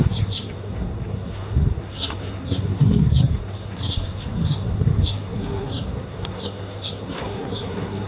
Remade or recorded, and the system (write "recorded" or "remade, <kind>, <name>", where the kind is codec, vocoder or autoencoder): remade, codec, SNAC